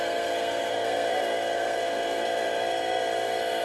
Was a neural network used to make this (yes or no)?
yes